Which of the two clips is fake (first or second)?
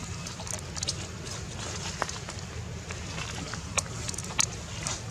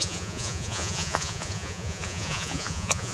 second